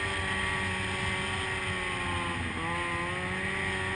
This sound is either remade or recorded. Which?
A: recorded